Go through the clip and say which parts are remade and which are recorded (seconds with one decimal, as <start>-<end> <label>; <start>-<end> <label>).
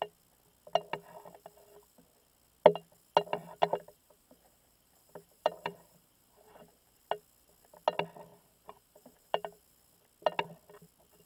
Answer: 0.0-4.0 recorded; 4.0-7.0 remade; 7.0-8.3 recorded; 8.3-9.6 remade; 9.6-11.3 recorded